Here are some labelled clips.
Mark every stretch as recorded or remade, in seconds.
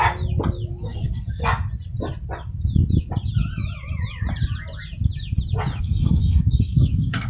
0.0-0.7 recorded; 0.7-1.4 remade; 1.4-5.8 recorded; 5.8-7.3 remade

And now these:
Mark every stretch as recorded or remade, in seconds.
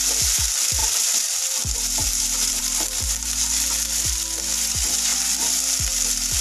0.0-0.8 recorded; 0.8-2.6 remade; 2.6-6.4 recorded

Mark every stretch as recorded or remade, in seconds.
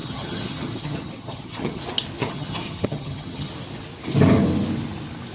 0.0-1.8 remade; 1.8-2.2 recorded; 2.2-3.5 remade; 3.5-5.3 recorded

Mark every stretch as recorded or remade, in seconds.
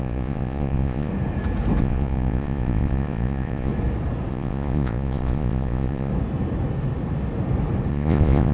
0.0-1.1 remade; 1.1-1.8 recorded; 1.8-3.7 remade; 3.7-4.3 recorded; 4.3-6.1 remade; 6.1-7.9 recorded; 7.9-8.5 remade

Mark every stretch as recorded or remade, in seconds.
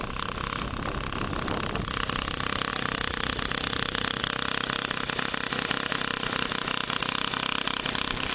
0.0-8.3 recorded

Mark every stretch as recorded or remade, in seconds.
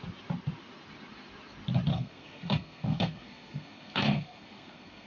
0.0-1.9 recorded; 1.9-5.1 remade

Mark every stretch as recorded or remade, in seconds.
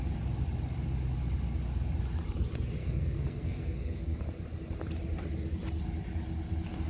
0.0-2.8 recorded; 2.8-4.2 remade; 4.2-6.9 recorded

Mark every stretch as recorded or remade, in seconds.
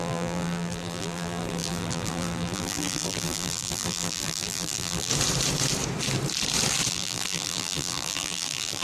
0.0-5.1 remade; 5.1-6.9 recorded; 6.9-8.8 remade